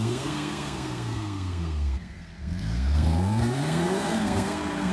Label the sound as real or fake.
fake